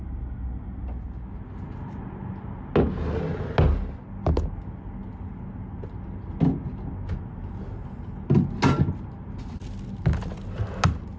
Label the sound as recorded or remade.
recorded